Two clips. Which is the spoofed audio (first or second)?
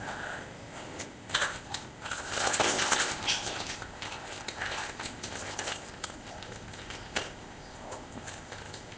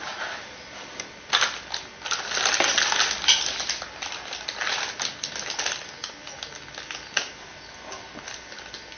first